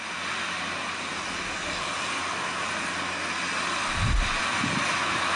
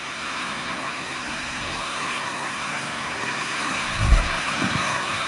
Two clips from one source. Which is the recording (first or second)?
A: first